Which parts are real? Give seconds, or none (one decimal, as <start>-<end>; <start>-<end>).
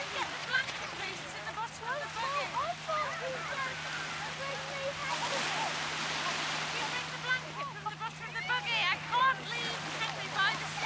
0.0-0.4; 1.2-10.9